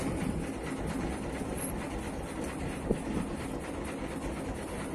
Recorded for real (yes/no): yes